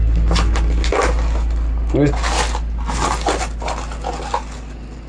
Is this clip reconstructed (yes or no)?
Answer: no